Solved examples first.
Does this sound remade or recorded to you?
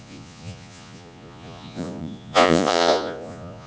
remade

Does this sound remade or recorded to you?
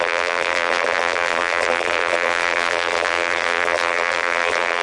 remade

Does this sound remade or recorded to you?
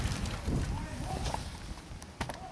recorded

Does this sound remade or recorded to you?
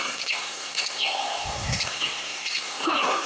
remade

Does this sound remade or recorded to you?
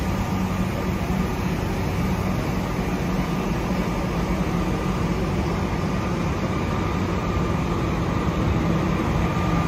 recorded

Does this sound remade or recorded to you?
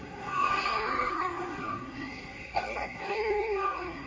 remade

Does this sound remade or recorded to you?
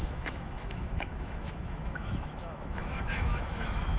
remade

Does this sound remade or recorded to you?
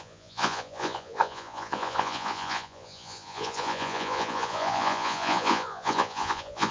remade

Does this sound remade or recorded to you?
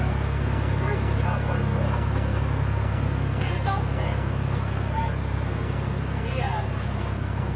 remade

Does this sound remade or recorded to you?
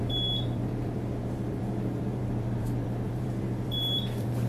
remade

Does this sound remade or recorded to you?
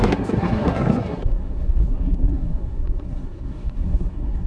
remade